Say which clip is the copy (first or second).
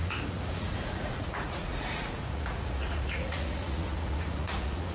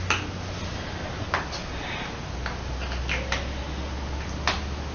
first